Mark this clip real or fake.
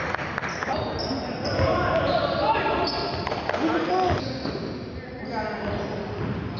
real